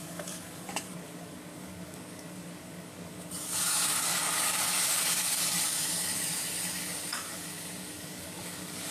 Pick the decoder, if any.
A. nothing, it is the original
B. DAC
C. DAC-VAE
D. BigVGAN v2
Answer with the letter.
B